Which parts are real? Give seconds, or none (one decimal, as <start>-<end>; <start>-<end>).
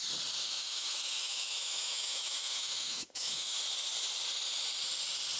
0.0-0.4; 3.6-5.4